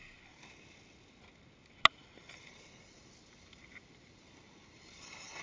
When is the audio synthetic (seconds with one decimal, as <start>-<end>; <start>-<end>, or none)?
none